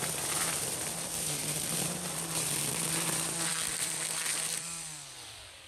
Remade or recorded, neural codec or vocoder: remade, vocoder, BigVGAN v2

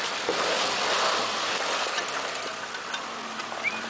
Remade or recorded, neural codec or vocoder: recorded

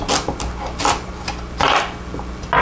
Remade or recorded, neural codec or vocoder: recorded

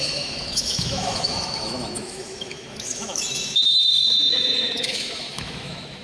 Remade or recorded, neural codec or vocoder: remade, autoencoder, DAC-VAE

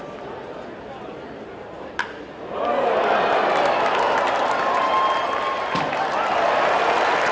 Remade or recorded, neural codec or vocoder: recorded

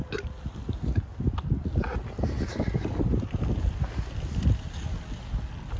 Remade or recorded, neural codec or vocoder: recorded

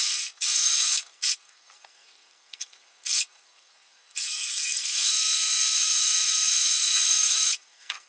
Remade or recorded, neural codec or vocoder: remade, codec, SNAC